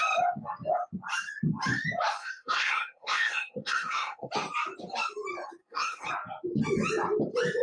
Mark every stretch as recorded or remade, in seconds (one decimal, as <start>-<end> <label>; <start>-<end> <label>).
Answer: 0.0-2.2 recorded; 2.2-4.3 remade; 4.3-5.6 recorded; 5.6-6.1 remade; 6.1-7.6 recorded